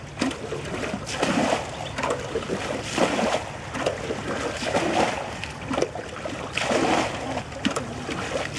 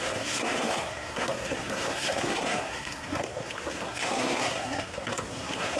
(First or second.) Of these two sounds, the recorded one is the first